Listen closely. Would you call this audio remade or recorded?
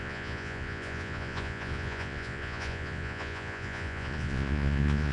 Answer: remade